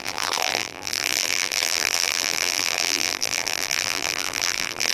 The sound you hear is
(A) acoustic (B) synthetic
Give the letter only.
B